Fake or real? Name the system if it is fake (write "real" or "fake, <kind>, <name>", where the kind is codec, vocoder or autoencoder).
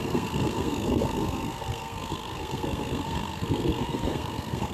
fake, codec, SNAC